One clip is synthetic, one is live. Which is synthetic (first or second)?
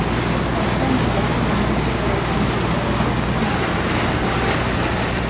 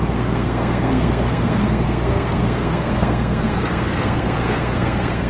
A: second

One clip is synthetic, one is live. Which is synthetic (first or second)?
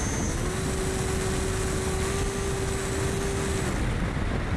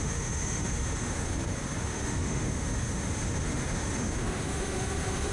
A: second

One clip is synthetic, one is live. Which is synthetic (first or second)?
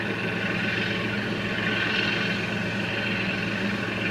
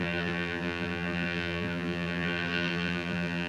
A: second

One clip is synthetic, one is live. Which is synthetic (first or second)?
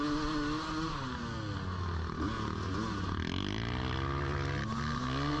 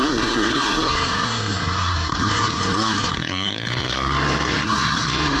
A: second